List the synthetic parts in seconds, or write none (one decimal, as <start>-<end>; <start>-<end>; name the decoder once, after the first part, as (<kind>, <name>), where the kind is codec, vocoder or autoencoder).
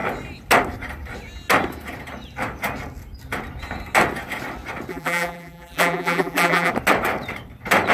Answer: 4.9-6.7 (vocoder, BigVGAN v2)